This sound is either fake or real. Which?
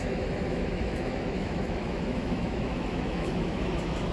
fake